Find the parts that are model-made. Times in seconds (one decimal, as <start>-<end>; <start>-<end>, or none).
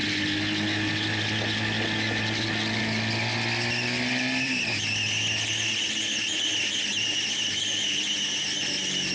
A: none